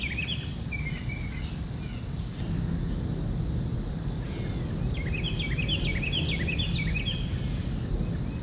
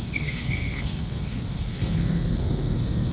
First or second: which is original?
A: first